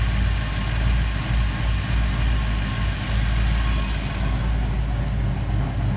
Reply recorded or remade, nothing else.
recorded